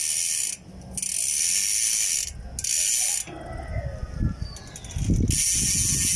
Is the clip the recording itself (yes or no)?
yes